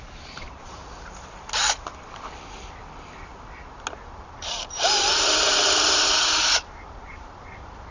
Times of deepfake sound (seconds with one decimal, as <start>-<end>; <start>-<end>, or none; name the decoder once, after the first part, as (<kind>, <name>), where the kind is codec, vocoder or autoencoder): 0.0-0.8 (vocoder, BigVGAN v2); 4.1-7.9